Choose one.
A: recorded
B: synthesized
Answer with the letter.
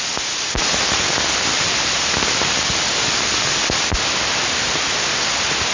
A